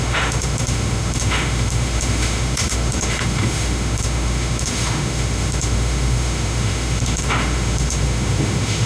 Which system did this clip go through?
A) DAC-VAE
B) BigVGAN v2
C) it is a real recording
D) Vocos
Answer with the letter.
A